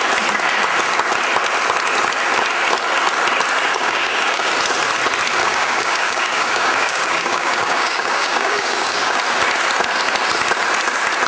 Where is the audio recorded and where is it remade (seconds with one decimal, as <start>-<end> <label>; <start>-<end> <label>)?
0.0-3.7 recorded; 3.7-4.5 remade; 4.5-5.4 recorded; 5.4-9.2 remade; 9.2-11.3 recorded